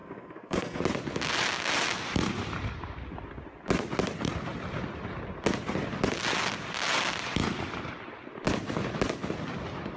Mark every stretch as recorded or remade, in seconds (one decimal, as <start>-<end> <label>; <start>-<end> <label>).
0.0-0.8 remade; 0.8-10.0 recorded